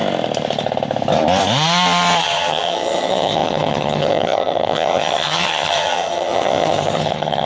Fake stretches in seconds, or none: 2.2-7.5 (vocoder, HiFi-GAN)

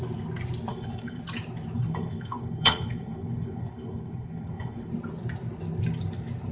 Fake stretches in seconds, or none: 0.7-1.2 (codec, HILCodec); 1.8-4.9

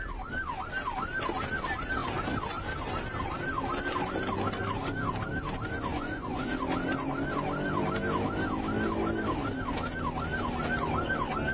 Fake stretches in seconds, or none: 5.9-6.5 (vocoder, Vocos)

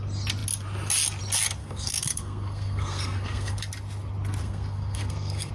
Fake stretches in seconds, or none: 1.6-3.7 (codec, SNAC); 4.4-5.5